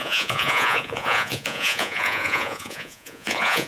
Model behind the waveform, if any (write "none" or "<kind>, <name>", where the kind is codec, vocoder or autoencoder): vocoder, Vocos